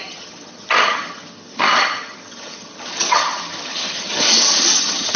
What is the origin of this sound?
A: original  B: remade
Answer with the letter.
B